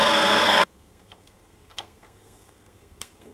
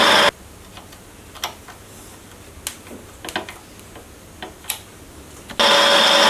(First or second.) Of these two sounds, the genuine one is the second